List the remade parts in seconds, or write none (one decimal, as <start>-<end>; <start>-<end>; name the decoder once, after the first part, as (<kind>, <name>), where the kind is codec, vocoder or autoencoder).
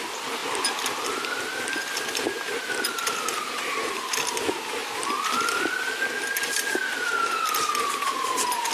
none